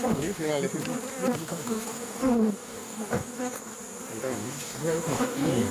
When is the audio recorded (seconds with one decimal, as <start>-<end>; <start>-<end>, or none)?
0.5-1.4; 3.7-4.2